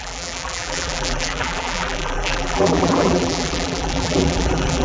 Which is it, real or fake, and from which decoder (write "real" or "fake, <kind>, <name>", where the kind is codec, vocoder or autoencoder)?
fake, vocoder, BigVGAN v2